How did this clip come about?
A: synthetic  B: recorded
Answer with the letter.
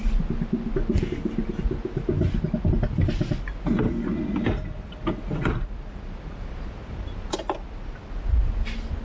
B